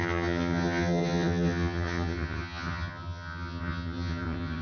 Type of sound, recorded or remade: remade